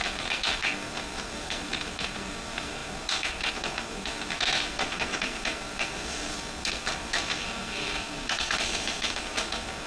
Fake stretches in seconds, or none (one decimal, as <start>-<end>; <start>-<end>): 0.0-9.9